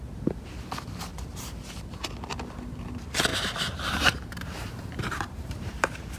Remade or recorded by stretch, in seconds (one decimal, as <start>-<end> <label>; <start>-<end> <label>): 0.0-1.1 recorded; 1.1-1.8 remade; 1.8-3.3 recorded; 3.3-6.2 remade